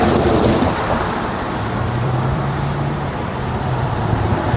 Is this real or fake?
fake